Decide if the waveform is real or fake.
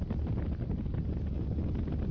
real